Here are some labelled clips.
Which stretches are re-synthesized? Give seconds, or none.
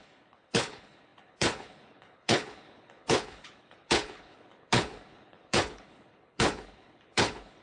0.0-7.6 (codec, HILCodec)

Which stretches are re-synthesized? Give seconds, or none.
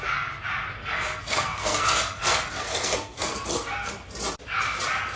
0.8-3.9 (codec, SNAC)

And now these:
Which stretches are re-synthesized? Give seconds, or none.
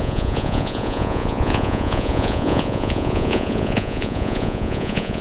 0.0-5.2 (vocoder, Vocos)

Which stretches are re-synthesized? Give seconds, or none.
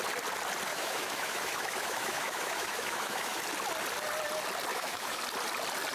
0.7-3.4 (autoencoder, DAC-VAE); 4.7-5.2